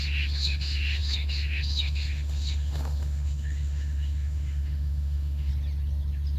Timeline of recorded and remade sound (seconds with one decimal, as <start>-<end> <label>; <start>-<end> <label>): 0.0-5.5 remade; 5.5-6.4 recorded